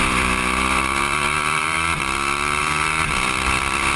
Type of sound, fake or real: fake